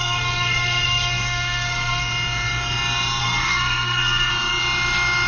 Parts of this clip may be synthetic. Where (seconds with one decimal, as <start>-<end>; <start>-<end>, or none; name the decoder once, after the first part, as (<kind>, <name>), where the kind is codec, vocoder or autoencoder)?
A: 0.0-2.1 (codec, SNAC); 3.2-4.3

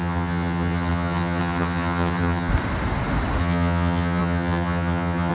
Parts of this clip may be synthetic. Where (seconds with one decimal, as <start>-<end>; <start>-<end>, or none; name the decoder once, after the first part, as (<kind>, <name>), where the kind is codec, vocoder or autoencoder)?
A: 0.0-2.5 (vocoder, HiFi-GAN); 3.4-5.3

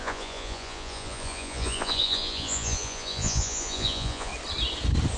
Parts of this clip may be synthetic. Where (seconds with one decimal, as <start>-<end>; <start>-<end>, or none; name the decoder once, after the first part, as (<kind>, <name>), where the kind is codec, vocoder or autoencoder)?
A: 0.0-4.3 (vocoder, Vocos)

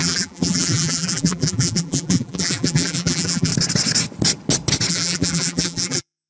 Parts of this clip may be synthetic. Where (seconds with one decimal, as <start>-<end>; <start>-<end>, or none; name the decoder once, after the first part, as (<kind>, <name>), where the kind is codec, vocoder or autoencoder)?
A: 0.0-3.5 (vocoder, BigVGAN v2); 4.9-6.3

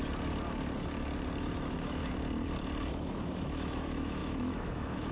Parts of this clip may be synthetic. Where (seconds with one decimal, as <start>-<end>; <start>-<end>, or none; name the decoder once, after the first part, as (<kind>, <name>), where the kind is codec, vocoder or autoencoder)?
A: 1.4-2.0 (autoencoder, DAC-VAE); 2.9-5.1

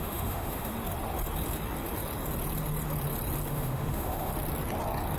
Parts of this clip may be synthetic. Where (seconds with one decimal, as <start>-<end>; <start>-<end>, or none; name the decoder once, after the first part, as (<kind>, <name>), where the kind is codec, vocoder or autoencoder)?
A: 0.0-0.7 (autoencoder, DAC-VAE); 3.5-4.3

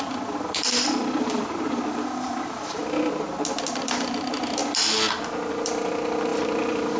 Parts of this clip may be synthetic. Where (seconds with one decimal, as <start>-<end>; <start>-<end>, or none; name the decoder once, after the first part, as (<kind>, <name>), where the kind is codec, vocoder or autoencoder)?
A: 0.0-2.8 (vocoder, BigVGAN v2); 3.8-4.6; 5.5-7.0